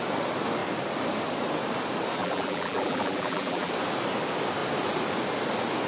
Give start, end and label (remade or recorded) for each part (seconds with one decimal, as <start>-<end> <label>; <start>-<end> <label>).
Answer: 0.0-2.2 recorded; 2.2-3.7 remade; 3.7-5.9 recorded